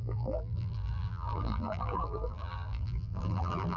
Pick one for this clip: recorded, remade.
remade